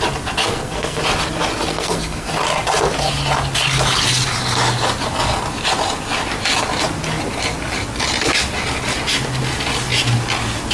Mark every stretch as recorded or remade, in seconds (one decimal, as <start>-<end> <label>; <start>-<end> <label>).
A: 0.0-0.4 recorded; 0.4-1.0 remade; 1.0-1.7 recorded; 1.7-2.3 remade; 2.3-10.7 recorded

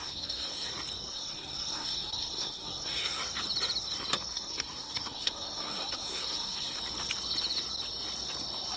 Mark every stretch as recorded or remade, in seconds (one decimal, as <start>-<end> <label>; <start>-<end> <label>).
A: 0.0-0.7 remade; 0.7-1.1 recorded; 1.1-3.2 remade; 3.2-4.3 recorded; 4.3-6.8 remade; 6.8-8.8 recorded

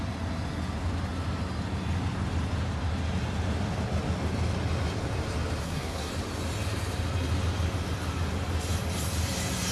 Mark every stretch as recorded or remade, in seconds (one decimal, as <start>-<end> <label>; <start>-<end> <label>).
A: 0.0-5.6 recorded; 5.6-6.1 remade; 6.1-9.7 recorded

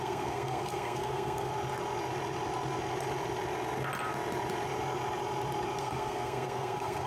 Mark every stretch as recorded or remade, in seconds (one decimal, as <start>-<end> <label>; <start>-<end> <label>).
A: 0.0-1.5 remade; 1.5-5.8 recorded; 5.8-7.1 remade

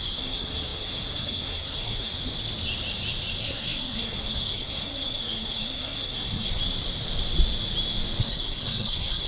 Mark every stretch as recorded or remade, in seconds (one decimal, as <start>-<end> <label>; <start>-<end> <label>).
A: 0.0-2.1 remade; 2.1-3.4 recorded; 3.4-6.6 remade; 6.6-8.2 recorded; 8.2-9.3 remade

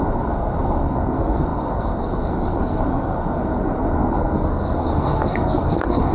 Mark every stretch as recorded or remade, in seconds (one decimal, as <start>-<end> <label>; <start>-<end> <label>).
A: 0.0-6.1 remade

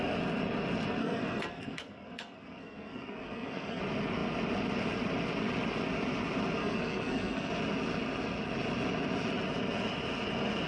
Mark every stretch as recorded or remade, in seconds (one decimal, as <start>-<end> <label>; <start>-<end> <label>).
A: 0.0-1.0 recorded; 1.0-3.8 remade; 3.8-6.6 recorded; 6.6-7.5 remade; 7.5-10.7 recorded